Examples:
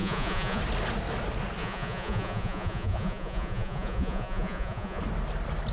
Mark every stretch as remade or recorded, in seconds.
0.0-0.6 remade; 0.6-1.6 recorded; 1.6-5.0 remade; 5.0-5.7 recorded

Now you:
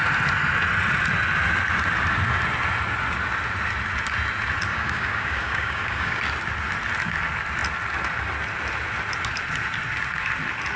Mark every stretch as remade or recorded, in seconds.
0.0-4.7 recorded; 4.7-6.2 remade; 6.2-10.8 recorded

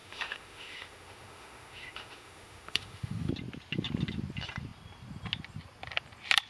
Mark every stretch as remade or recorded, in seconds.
0.0-3.3 remade; 3.3-6.5 recorded